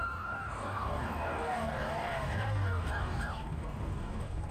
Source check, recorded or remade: remade